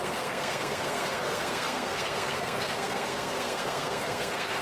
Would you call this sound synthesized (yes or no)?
yes